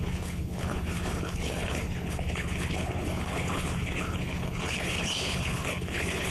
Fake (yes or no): yes